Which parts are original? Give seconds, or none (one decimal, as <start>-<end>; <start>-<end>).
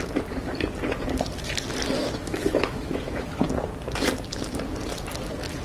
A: 0.0-2.0; 3.5-5.6